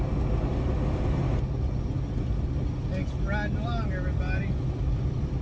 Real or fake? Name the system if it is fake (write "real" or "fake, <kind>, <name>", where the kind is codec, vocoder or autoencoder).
real